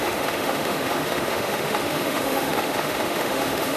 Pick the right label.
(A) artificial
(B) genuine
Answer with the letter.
A